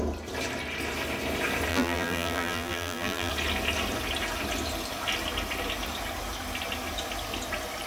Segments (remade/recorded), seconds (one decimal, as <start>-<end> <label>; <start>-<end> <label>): 0.0-1.7 recorded; 1.7-3.3 remade; 3.3-7.9 recorded